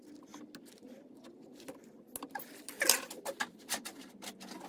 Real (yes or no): yes